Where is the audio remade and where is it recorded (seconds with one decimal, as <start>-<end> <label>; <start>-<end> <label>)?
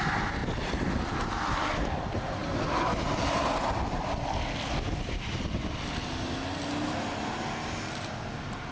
0.0-8.7 recorded